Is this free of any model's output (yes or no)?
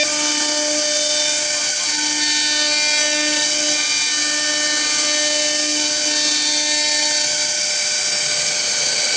yes